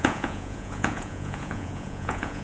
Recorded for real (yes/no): no